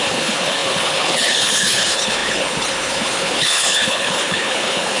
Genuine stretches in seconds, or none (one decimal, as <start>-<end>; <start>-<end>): none